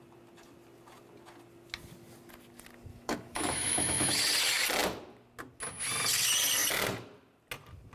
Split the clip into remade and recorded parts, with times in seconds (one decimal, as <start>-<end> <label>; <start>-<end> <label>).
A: 0.0-2.9 recorded; 2.9-4.2 remade; 4.2-7.9 recorded